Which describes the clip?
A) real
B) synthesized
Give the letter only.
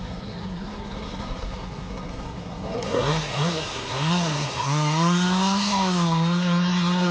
B